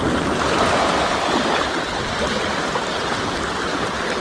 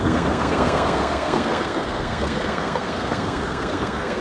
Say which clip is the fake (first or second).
second